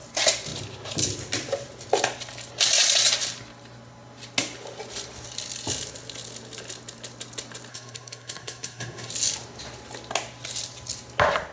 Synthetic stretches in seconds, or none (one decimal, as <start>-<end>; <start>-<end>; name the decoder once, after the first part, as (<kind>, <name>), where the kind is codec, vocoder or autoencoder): 7.7-9.1 (codec, SNAC)